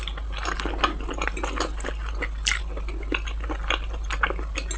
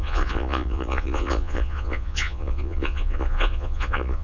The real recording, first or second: first